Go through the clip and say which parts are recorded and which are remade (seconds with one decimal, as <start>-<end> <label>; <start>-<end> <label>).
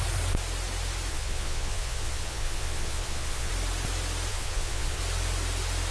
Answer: 0.0-1.1 recorded; 1.1-3.5 remade; 3.5-4.3 recorded; 4.3-5.0 remade; 5.0-5.9 recorded